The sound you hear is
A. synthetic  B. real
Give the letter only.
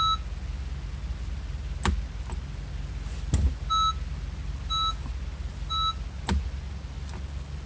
B